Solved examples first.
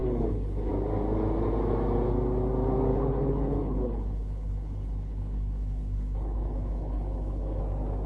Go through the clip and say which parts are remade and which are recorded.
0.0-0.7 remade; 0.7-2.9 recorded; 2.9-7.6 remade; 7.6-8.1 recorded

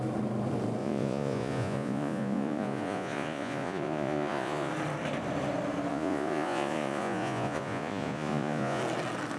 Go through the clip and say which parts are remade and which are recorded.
0.0-0.8 recorded; 0.8-4.7 remade; 4.7-5.9 recorded; 5.9-8.8 remade; 8.8-9.4 recorded

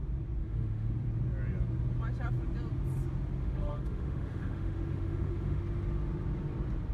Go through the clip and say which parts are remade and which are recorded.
0.0-0.4 recorded; 0.4-0.9 remade; 0.9-3.4 recorded; 3.4-5.6 remade; 5.6-6.9 recorded